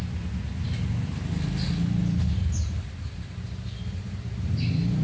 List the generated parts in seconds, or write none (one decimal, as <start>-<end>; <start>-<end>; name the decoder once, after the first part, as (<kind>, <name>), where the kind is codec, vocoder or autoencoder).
2.0-3.3 (vocoder, BigVGAN v2)